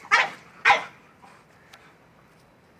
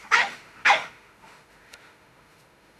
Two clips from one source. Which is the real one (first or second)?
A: first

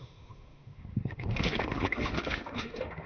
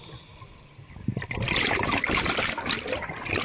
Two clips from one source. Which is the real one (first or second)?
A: second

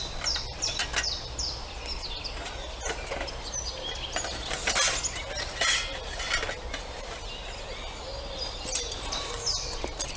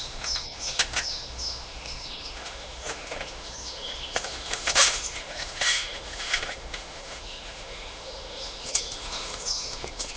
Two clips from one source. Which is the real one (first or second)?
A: first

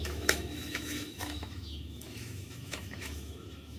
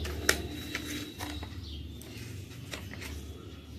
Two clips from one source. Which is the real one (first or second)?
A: second